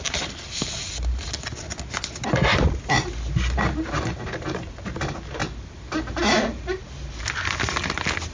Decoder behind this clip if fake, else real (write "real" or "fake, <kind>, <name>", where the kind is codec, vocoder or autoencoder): real